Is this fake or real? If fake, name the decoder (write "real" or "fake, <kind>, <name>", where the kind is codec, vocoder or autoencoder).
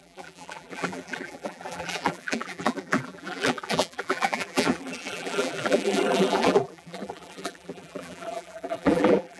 fake, vocoder, BigVGAN v2